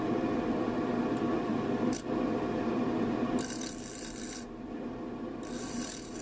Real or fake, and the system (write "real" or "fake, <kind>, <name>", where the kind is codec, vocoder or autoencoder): fake, vocoder, BigVGAN v2